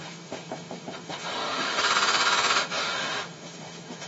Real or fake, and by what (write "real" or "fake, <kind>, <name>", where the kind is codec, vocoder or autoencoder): fake, autoencoder, DAC-VAE